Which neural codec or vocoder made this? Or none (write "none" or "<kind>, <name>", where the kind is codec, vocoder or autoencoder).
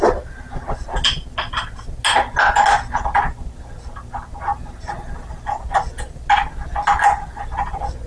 none